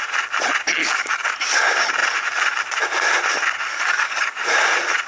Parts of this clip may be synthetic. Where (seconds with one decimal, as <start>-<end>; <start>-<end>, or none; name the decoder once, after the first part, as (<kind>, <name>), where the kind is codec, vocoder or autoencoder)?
0.8-1.3 (codec, DAC); 3.7-4.5